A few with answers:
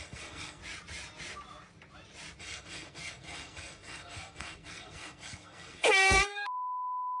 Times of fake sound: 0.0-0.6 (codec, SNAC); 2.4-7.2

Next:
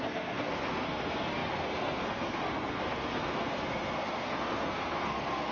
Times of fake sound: 0.0-5.5 (codec, SNAC)